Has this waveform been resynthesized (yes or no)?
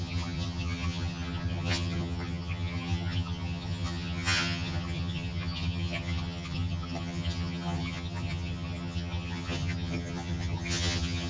yes